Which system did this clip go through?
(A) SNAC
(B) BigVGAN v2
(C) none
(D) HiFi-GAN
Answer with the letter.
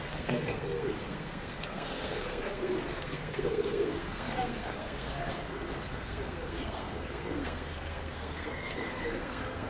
A